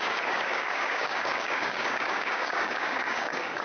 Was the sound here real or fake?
fake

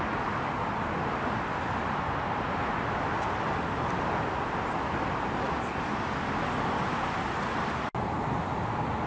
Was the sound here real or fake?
real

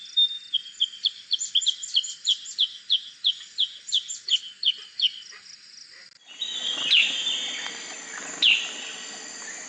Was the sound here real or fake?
real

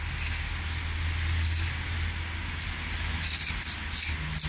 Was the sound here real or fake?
real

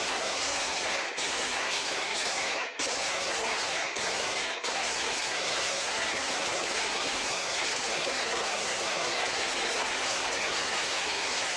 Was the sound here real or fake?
fake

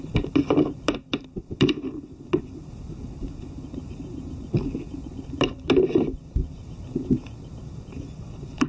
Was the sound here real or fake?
real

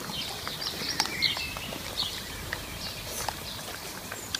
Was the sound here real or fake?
fake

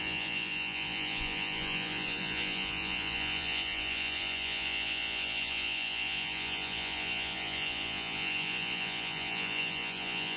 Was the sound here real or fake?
fake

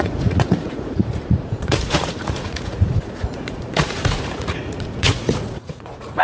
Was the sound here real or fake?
fake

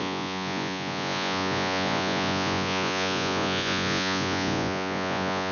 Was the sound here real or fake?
fake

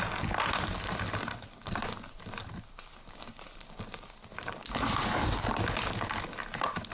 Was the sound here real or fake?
real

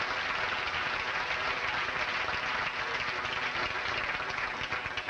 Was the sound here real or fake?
real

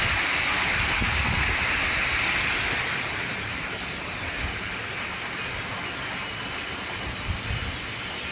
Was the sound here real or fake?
real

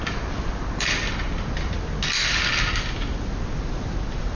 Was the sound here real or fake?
real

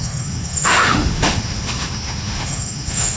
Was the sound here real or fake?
fake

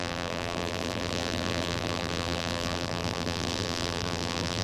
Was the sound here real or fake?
fake